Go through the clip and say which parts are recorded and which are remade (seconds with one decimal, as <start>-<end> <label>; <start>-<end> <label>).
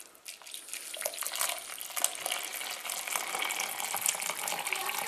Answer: 0.0-5.1 recorded